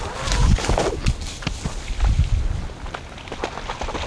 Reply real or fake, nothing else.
real